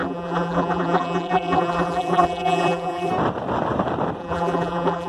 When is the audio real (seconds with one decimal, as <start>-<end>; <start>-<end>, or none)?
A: 3.1-4.2

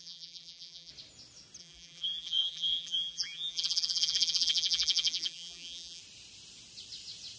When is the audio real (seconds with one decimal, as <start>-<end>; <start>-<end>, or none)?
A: 0.9-1.6; 6.0-7.4

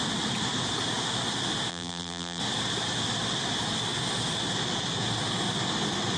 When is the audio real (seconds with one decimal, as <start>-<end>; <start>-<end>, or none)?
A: 0.0-1.7; 2.4-6.2

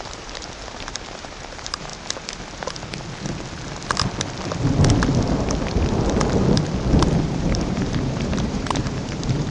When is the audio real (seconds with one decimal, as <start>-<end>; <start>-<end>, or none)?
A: 1.9-7.2

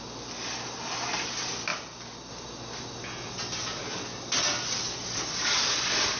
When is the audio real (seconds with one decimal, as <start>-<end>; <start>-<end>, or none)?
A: 0.0-1.7; 2.3-3.9

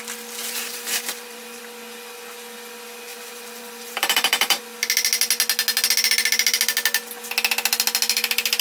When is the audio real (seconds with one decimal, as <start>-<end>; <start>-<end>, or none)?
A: 0.0-0.4; 1.6-3.1; 4.6-8.6

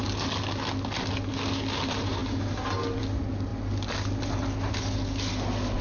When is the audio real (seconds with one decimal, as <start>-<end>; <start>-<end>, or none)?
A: 0.0-5.8